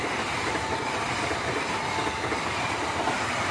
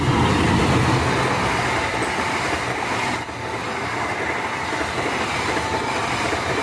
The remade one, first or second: first